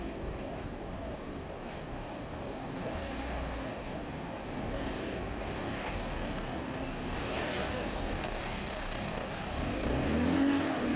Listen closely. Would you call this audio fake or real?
fake